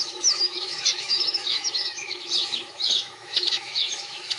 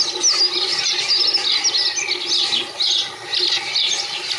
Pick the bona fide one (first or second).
second